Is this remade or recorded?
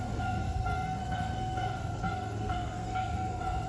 remade